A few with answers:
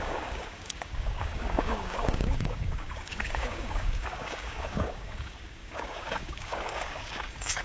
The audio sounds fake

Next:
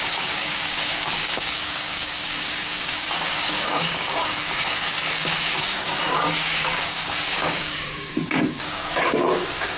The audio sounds fake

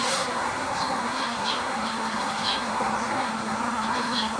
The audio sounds fake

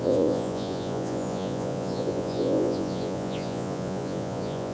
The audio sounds fake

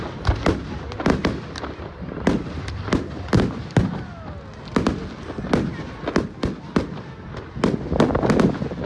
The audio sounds real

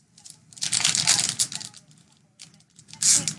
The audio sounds real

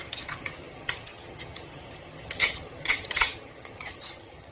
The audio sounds fake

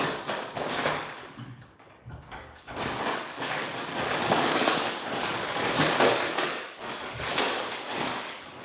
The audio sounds fake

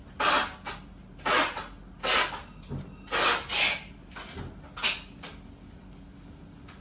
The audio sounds real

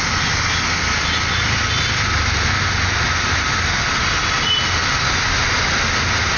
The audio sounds real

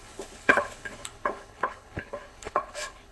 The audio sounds fake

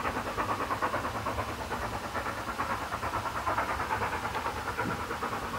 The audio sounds real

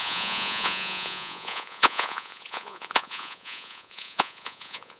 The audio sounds fake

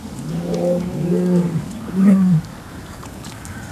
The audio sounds fake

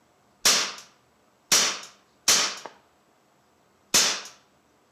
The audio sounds real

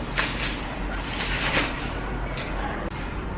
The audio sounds real